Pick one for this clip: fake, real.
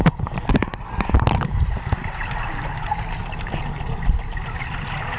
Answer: real